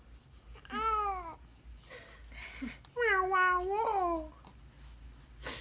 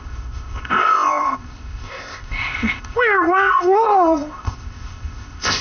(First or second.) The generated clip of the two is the second